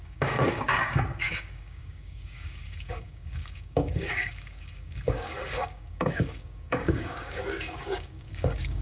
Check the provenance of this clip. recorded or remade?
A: remade